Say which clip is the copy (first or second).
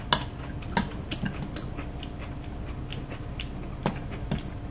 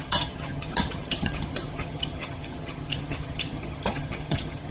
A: second